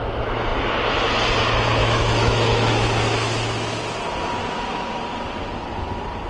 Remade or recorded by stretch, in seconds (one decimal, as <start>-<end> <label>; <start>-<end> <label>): 0.0-1.8 recorded; 1.8-3.8 remade; 3.8-6.3 recorded